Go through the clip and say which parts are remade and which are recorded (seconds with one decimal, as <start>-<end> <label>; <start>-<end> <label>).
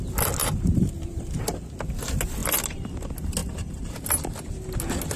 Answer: 0.0-0.4 recorded; 0.4-1.4 remade; 1.4-5.2 recorded